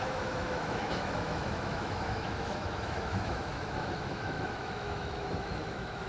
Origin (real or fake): fake